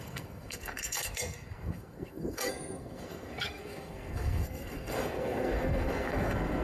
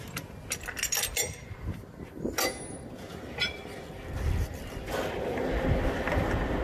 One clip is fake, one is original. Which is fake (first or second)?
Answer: first